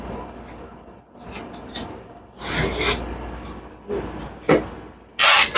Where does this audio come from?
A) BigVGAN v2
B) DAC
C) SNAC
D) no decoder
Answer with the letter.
D